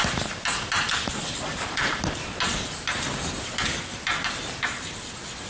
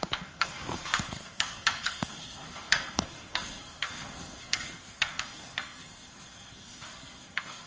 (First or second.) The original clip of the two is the first